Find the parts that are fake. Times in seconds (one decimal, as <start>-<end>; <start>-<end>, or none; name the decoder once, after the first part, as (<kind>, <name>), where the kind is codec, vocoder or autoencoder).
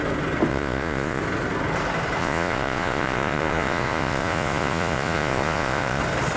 0.5-1.2 (vocoder, Vocos); 2.2-6.0